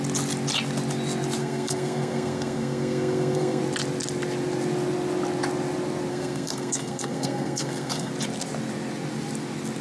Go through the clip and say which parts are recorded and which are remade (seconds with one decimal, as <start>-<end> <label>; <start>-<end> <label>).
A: 0.0-1.4 recorded; 1.4-3.6 remade; 3.6-6.1 recorded; 6.1-8.1 remade; 8.1-9.8 recorded